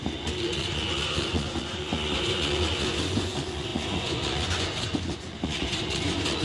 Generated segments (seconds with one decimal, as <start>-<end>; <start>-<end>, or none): 0.0-6.4

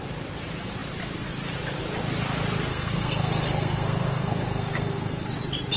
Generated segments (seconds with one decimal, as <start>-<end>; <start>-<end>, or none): 2.7-5.3

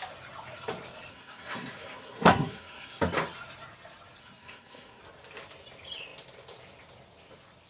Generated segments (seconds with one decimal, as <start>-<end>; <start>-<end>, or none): 1.1-3.0; 4.2-5.0

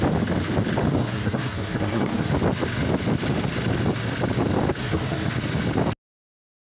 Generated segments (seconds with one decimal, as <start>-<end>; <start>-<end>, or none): 1.0-2.3; 4.8-5.3

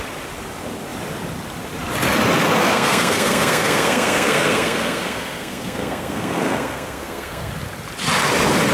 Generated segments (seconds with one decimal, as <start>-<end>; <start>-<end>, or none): 2.6-7.5

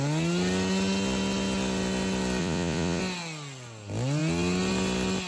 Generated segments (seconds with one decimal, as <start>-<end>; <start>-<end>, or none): 2.4-3.0